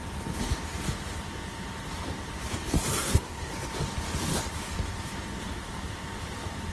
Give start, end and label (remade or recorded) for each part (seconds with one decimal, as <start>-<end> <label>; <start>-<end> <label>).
0.0-3.0 recorded; 3.0-3.5 remade; 3.5-6.7 recorded